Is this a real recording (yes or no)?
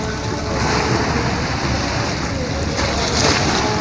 yes